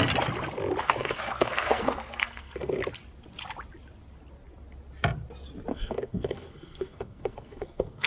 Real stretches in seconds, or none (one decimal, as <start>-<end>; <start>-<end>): 0.0-0.8; 2.8-5.7